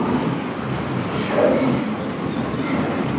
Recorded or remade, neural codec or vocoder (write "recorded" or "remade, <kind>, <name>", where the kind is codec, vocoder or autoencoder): recorded